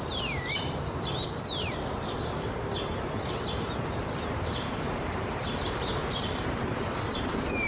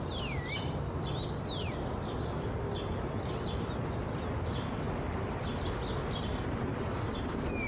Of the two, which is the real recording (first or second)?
second